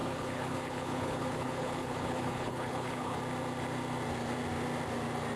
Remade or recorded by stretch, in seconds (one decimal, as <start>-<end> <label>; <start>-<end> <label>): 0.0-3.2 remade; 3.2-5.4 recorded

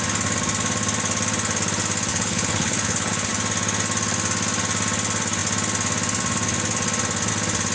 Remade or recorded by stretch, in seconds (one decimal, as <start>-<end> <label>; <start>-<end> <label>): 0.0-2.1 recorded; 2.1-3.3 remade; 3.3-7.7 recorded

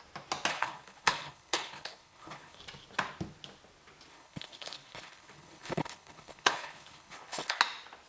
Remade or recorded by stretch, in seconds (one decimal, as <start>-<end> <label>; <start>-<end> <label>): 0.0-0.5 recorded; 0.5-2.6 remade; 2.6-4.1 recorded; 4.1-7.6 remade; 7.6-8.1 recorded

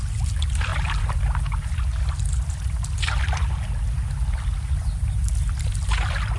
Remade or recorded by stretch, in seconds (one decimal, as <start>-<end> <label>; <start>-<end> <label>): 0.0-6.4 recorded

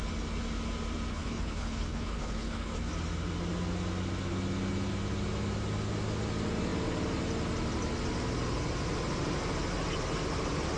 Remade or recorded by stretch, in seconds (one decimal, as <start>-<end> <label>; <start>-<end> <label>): 0.0-1.1 recorded; 1.1-2.9 remade; 2.9-10.8 recorded

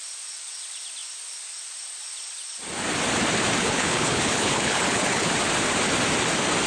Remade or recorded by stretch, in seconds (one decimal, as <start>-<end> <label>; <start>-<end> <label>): 0.0-3.6 recorded; 3.6-5.3 remade; 5.3-6.7 recorded

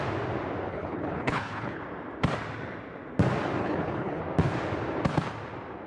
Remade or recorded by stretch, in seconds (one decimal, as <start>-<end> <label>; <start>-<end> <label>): 0.0-0.7 recorded; 0.7-1.8 remade; 1.8-3.6 recorded; 3.6-4.2 remade; 4.2-5.9 recorded

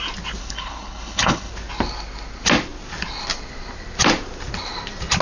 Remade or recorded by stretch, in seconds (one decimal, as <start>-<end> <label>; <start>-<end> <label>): 0.0-0.4 recorded; 0.4-1.5 remade; 1.5-5.2 recorded